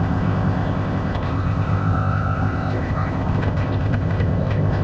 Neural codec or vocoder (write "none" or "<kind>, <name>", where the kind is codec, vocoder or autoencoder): codec, ZipCodec